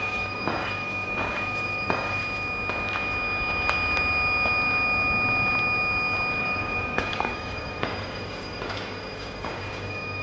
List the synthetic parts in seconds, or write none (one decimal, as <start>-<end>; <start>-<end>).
0.0-2.2; 6.4-10.2